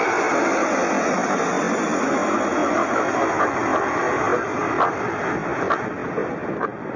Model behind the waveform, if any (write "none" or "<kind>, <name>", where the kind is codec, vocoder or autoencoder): none